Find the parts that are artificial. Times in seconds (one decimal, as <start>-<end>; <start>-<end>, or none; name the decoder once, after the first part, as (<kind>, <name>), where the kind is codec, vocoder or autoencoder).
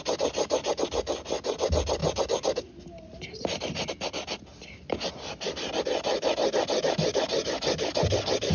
none